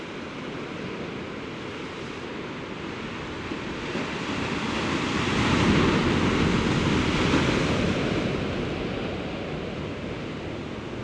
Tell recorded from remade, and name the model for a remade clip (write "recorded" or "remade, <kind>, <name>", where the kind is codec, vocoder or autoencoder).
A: recorded